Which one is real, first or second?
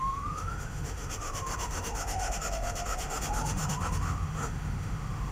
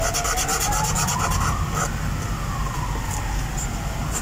second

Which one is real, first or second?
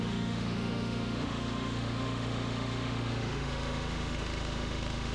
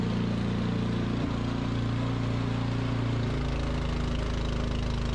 second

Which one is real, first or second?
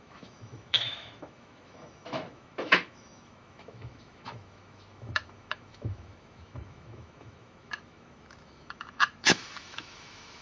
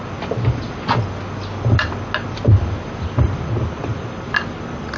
second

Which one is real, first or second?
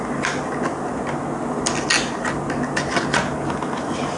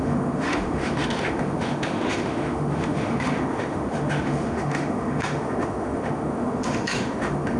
first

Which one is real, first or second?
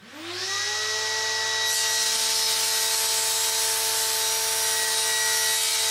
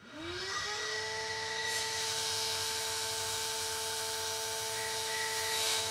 first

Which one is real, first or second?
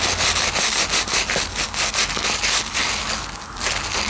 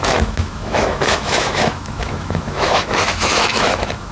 first